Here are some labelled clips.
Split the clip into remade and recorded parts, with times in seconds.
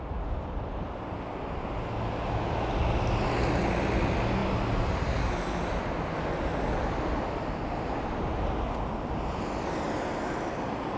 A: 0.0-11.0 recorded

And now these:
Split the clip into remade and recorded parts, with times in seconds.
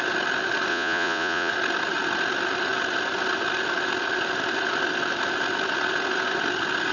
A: 0.0-0.7 recorded; 0.7-1.5 remade; 1.5-6.9 recorded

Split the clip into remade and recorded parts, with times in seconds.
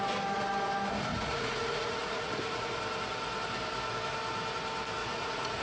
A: 0.0-1.1 recorded; 1.1-2.8 remade; 2.8-5.0 recorded; 5.0-5.6 remade